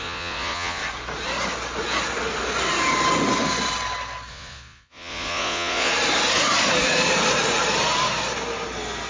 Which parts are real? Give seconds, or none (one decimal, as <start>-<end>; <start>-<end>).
0.8-4.3; 5.9-9.1